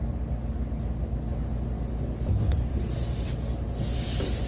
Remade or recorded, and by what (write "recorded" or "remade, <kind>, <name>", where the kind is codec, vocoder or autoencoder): recorded